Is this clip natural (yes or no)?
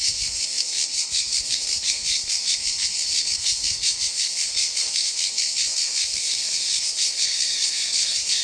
no